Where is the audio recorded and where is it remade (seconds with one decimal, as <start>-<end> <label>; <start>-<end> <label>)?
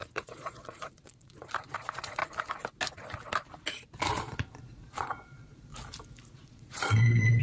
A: 0.0-2.2 remade; 2.2-4.1 recorded; 4.1-5.7 remade; 5.7-6.3 recorded; 6.3-7.4 remade